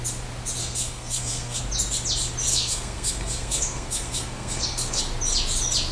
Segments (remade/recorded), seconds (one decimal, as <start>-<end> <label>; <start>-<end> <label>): 0.0-0.6 recorded; 0.6-1.6 remade; 1.6-2.5 recorded; 2.5-5.0 remade; 5.0-5.9 recorded